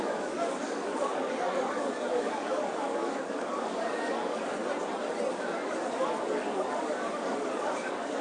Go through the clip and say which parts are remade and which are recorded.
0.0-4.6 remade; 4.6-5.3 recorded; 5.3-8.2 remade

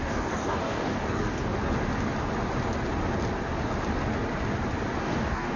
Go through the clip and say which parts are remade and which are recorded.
0.0-1.6 remade; 1.6-5.0 recorded; 5.0-5.6 remade

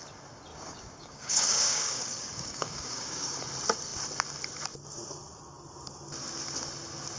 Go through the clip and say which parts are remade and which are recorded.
0.0-0.5 recorded; 0.5-3.4 remade; 3.4-7.2 recorded

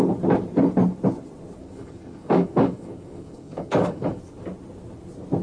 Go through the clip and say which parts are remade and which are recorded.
0.0-1.6 recorded; 1.6-4.2 remade; 4.2-5.4 recorded

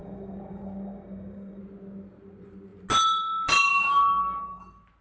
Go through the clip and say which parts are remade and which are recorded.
0.0-1.6 remade; 1.6-3.7 recorded; 3.7-4.6 remade; 4.6-5.0 recorded

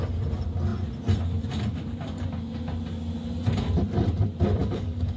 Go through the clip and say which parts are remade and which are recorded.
0.0-4.6 recorded; 4.6-5.2 remade

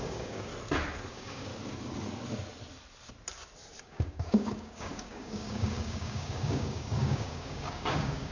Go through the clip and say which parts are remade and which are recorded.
0.0-0.5 remade; 0.5-1.1 recorded; 1.1-1.5 remade; 1.5-3.8 recorded; 3.8-8.3 remade